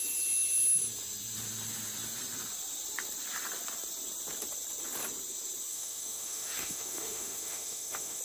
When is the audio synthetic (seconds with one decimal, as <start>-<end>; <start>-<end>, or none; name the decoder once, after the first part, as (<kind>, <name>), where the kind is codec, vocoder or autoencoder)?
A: 5.7-8.2 (autoencoder, DAC-VAE)